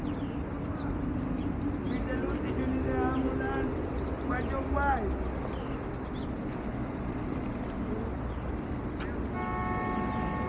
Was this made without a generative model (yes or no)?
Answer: yes